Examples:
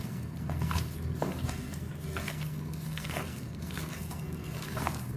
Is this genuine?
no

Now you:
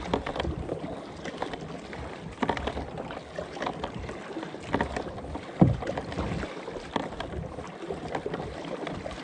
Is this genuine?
yes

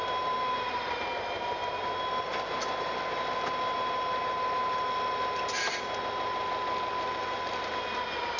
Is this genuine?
yes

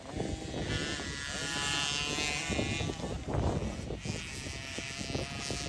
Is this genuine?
yes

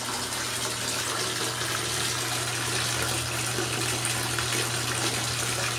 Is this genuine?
yes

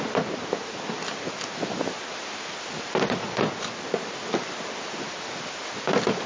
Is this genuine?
yes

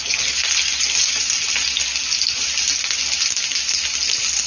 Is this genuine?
yes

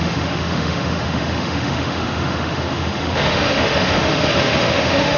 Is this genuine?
no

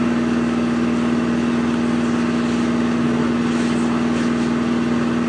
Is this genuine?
yes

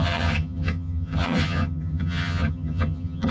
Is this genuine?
no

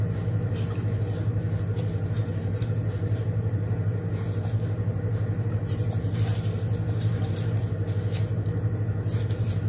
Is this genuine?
yes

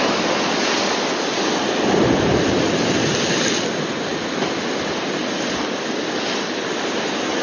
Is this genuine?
yes